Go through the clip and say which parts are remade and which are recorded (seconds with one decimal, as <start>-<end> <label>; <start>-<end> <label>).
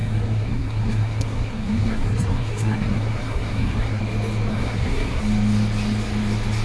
0.0-4.0 remade; 4.0-4.5 recorded; 4.5-5.2 remade; 5.2-6.6 recorded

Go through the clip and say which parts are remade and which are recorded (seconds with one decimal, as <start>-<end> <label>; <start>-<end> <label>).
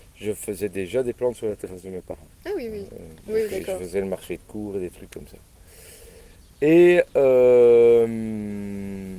0.0-1.5 recorded; 1.5-2.4 remade; 2.4-9.2 recorded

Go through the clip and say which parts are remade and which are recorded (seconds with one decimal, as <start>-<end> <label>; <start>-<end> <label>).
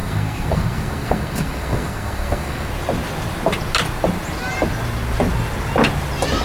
0.0-2.7 remade; 2.7-6.4 recorded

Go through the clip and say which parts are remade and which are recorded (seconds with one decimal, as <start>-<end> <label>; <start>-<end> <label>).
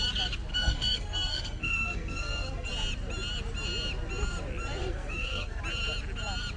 0.0-0.5 recorded; 0.5-2.7 remade; 2.7-4.8 recorded; 4.8-5.6 remade; 5.6-6.6 recorded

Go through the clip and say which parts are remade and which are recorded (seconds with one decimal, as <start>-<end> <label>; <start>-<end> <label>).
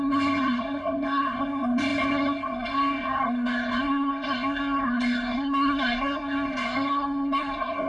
0.0-7.9 remade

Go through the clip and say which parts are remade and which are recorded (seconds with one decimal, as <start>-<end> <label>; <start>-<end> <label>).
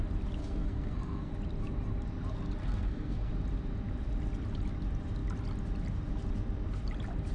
0.0-0.4 recorded; 0.4-1.3 remade; 1.3-2.6 recorded; 2.6-3.3 remade; 3.3-7.3 recorded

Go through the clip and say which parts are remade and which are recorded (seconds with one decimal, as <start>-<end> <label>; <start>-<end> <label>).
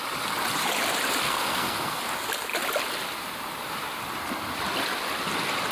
0.0-1.2 recorded; 1.2-2.0 remade; 2.0-5.7 recorded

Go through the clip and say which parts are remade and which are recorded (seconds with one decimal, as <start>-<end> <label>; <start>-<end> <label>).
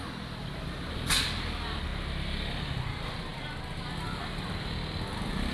0.0-5.5 recorded